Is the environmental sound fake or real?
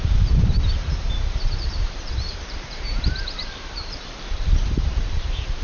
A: fake